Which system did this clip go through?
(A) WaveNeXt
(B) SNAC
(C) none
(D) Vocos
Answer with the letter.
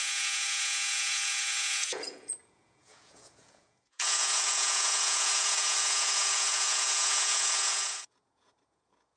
D